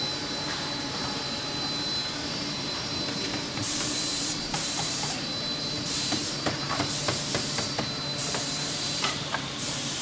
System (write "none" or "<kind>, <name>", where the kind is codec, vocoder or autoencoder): vocoder, BigVGAN v2